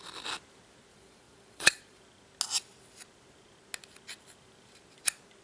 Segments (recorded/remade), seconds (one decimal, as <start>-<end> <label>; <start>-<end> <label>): 0.0-0.9 recorded; 0.9-2.0 remade; 2.0-5.4 recorded